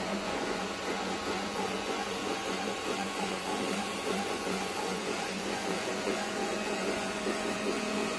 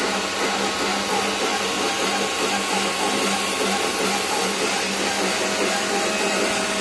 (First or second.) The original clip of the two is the second